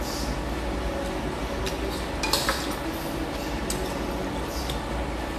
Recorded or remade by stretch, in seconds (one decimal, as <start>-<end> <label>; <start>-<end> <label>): 0.0-5.4 recorded